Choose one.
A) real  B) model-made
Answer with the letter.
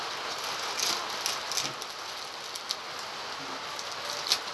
A